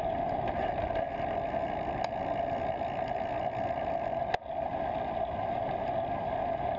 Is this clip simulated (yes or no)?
no